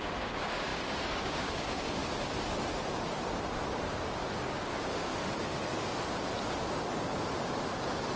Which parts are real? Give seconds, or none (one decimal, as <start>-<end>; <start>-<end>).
2.0-4.4; 5.1-8.2